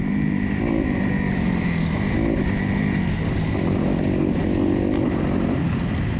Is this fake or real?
real